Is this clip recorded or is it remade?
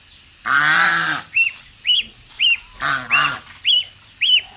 recorded